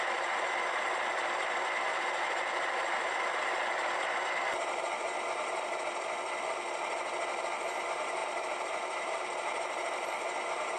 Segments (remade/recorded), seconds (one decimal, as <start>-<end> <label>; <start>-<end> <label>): 0.0-1.9 recorded; 1.9-3.2 remade; 3.2-8.2 recorded; 8.2-10.1 remade; 10.1-10.8 recorded